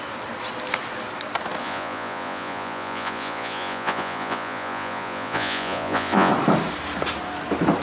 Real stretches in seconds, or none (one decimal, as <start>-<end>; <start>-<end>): 0.0-1.6; 6.3-7.8